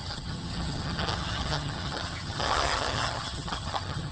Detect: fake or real fake